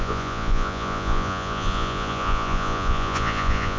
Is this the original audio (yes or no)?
no